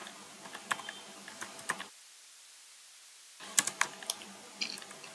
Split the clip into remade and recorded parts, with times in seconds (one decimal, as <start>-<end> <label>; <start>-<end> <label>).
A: 0.0-5.1 recorded